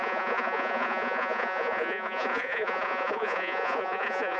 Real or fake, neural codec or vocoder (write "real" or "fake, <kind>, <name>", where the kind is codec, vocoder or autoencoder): fake, vocoder, Vocos